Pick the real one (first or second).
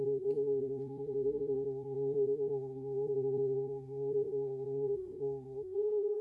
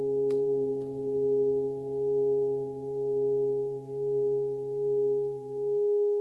second